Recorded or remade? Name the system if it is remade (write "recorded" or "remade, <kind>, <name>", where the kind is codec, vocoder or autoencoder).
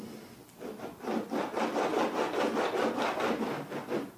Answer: recorded